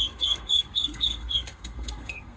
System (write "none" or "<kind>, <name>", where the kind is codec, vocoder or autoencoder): codec, SNAC